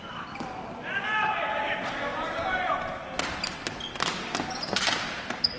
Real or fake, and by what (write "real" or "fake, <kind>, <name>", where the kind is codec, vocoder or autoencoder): real